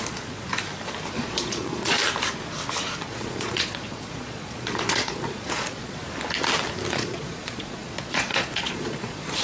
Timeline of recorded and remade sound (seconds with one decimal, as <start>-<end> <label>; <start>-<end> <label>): 0.0-0.5 remade; 0.5-1.1 recorded; 1.1-2.0 remade; 2.0-3.1 recorded; 3.1-6.0 remade; 6.0-6.9 recorded; 6.9-9.4 remade

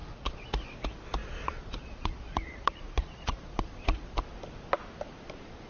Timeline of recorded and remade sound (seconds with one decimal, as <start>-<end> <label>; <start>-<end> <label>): 0.0-0.5 remade; 0.5-1.2 recorded; 1.2-4.2 remade; 4.2-5.7 recorded

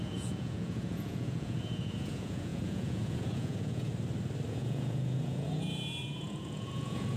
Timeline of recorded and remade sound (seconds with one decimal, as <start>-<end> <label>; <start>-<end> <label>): 0.0-3.9 remade; 3.9-4.5 recorded; 4.5-7.2 remade